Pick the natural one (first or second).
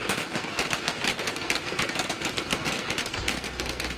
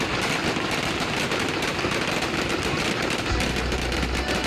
second